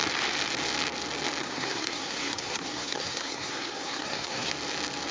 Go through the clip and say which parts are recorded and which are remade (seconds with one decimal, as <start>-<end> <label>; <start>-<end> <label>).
0.0-1.4 recorded; 1.4-4.5 remade; 4.5-5.1 recorded